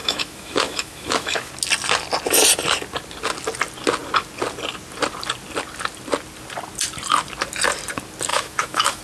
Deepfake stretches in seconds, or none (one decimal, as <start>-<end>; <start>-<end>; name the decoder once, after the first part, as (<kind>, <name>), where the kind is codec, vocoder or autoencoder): 0.0-1.5 (autoencoder, DAC-VAE); 8.3-9.0